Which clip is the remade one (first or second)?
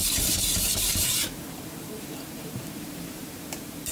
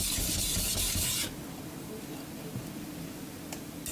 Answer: first